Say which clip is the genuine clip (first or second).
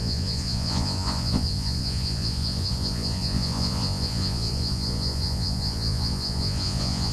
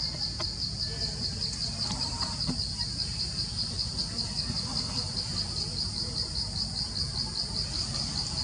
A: second